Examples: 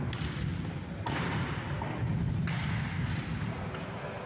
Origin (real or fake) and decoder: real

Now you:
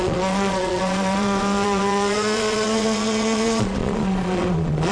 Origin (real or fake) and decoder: fake, vocoder, Vocos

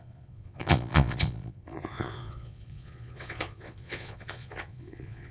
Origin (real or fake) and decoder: fake, vocoder, Vocos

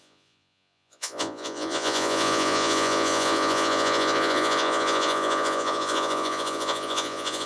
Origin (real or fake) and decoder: fake, vocoder, Vocos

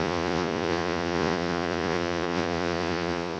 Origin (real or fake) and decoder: fake, vocoder, Vocos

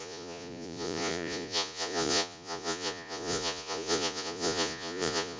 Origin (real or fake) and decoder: fake, vocoder, Vocos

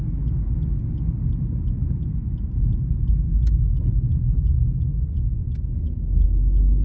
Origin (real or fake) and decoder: real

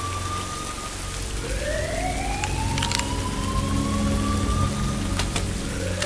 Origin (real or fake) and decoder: real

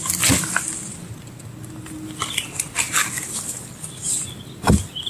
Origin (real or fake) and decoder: real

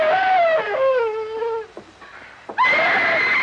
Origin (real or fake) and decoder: real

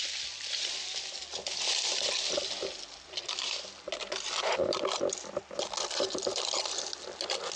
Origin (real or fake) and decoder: real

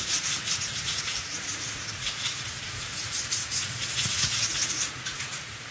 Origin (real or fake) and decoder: fake, vocoder, Vocos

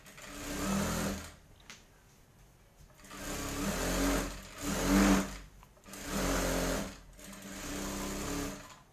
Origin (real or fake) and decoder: real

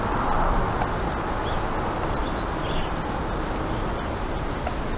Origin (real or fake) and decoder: real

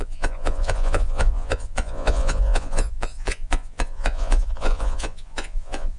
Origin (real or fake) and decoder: fake, vocoder, Vocos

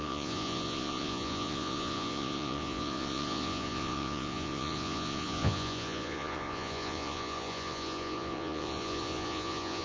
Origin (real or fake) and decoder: fake, vocoder, Vocos